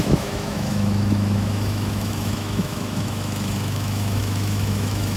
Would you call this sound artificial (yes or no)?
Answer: yes